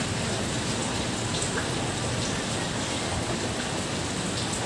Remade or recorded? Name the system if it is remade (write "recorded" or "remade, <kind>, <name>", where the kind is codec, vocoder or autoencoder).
recorded